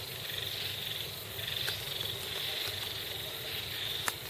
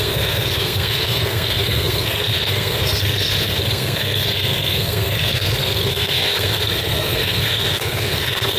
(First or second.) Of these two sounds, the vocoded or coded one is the second